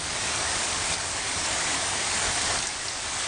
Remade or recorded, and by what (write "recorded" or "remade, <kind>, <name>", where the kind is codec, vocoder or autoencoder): remade, codec, DAC